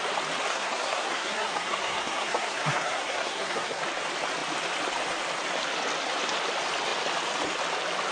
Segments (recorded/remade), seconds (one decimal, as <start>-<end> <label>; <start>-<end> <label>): 0.0-0.5 recorded; 0.5-3.8 remade; 3.8-8.1 recorded